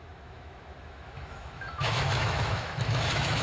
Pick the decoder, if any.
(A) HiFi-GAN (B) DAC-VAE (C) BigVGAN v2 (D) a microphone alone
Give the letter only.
B